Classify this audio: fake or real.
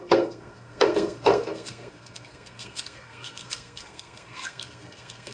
fake